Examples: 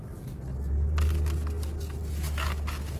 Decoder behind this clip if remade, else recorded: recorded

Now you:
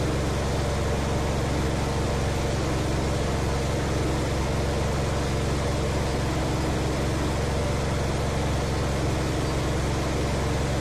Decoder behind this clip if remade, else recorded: recorded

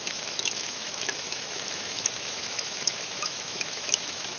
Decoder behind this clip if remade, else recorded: remade, autoencoder, DAC-VAE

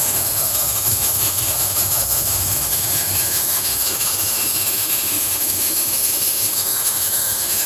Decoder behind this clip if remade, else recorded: remade, autoencoder, DAC-VAE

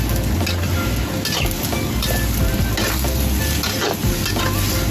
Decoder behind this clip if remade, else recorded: recorded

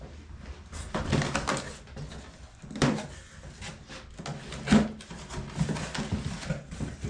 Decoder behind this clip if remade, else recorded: recorded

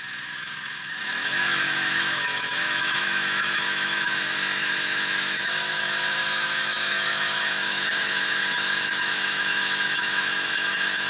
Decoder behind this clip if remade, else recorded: remade, autoencoder, DAC-VAE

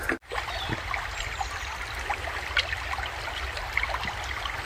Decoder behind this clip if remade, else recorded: recorded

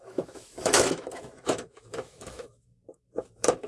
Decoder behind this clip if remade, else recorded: remade, autoencoder, DAC-VAE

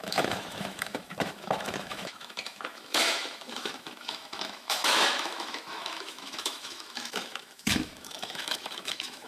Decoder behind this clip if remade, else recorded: remade, autoencoder, DAC-VAE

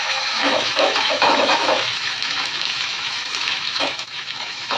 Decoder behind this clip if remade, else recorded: remade, autoencoder, DAC-VAE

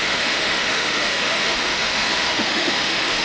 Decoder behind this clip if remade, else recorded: remade, autoencoder, DAC-VAE